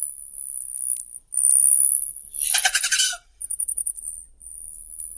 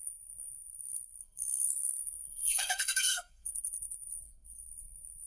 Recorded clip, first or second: first